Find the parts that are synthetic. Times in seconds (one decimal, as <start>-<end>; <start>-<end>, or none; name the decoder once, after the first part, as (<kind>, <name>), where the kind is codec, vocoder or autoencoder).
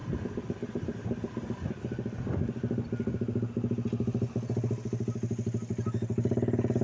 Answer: none